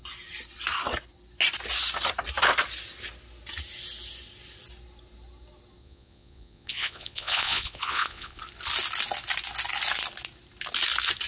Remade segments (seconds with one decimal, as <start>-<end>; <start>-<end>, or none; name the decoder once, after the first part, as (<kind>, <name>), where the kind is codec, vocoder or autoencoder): 5.8-8.4 (vocoder, Vocos)